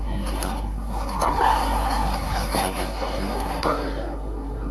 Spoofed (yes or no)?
yes